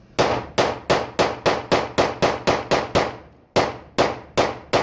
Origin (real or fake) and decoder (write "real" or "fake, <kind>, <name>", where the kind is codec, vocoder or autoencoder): real